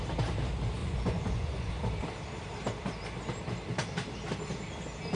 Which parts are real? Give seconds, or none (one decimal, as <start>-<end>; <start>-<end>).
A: 0.0-0.8; 1.7-5.2